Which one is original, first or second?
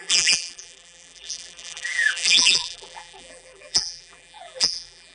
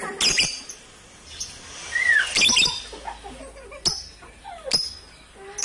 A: second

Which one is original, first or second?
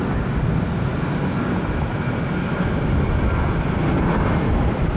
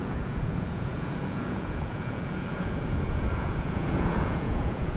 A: first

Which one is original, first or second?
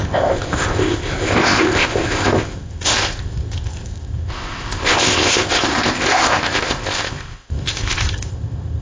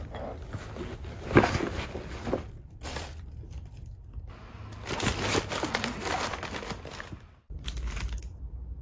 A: second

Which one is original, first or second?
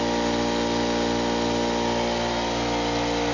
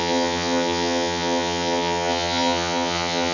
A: first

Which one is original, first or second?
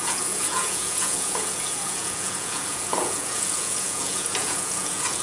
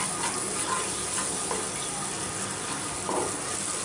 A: second